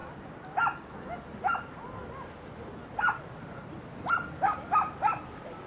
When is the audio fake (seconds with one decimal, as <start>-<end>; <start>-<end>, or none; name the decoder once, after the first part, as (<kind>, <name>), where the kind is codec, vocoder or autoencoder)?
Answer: none